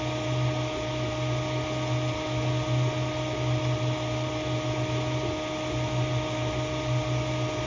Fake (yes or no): no